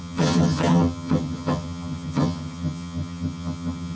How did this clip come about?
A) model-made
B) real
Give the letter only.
A